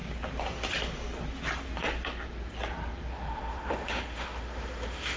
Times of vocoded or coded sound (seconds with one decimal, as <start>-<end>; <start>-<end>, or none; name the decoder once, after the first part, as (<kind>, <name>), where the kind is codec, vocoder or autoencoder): 3.1-5.2 (autoencoder, DAC-VAE)